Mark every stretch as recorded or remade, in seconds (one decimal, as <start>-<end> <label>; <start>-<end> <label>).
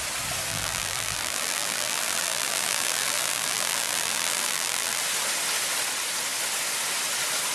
0.0-0.5 recorded; 0.5-5.0 remade; 5.0-7.5 recorded